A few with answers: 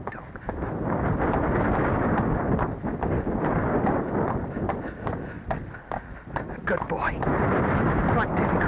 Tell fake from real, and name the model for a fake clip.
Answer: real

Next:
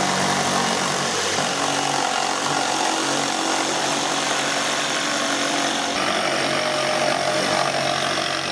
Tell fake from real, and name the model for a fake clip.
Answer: real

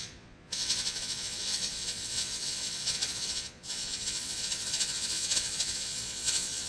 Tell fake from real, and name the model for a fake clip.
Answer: fake, vocoder, Vocos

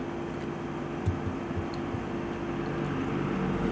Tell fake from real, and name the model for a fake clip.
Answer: real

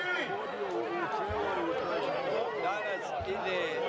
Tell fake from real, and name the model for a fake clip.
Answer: real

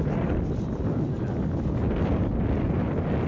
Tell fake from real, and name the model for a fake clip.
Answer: real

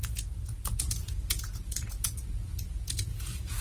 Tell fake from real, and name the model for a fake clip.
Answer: fake, vocoder, Vocos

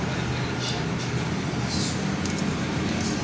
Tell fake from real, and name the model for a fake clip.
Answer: real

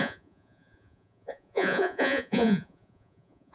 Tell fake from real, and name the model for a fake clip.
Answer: fake, vocoder, Vocos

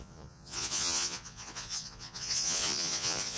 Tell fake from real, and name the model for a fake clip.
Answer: fake, vocoder, Vocos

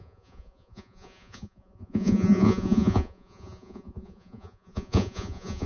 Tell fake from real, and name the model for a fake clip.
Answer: fake, vocoder, Vocos